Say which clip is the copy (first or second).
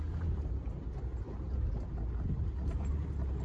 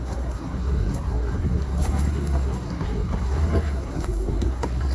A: second